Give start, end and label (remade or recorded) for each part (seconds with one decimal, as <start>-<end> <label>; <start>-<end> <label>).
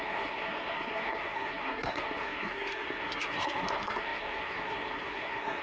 0.0-5.6 remade